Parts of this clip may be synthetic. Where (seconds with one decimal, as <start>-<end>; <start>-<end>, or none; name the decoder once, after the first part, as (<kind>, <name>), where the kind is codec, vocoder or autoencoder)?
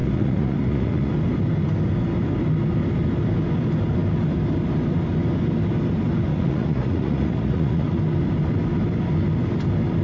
0.0-1.1 (vocoder, Vocos); 6.3-8.0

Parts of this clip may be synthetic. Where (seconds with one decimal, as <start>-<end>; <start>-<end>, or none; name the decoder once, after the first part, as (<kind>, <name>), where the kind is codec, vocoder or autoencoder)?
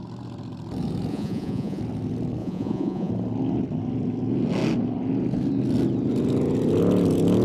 1.1-1.8 (vocoder, Vocos); 2.4-3.1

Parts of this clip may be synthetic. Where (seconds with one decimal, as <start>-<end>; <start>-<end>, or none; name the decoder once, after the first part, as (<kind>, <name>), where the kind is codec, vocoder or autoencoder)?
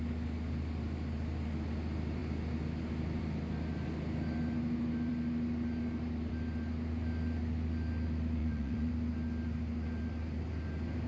8.4-8.9 (vocoder, Vocos)